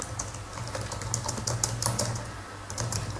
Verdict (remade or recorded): recorded